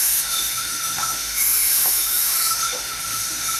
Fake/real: fake